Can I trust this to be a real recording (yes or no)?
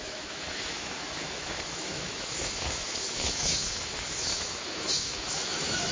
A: no